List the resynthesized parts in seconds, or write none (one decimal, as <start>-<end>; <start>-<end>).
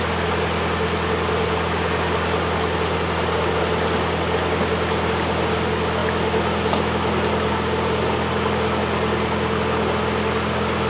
none